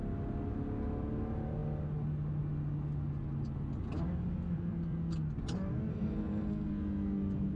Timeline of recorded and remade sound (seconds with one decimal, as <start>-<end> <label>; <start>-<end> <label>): 0.0-5.9 recorded; 5.9-6.7 remade; 6.7-7.6 recorded